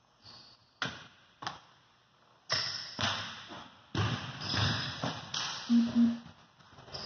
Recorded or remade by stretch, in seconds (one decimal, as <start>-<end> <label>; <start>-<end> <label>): 0.0-7.1 recorded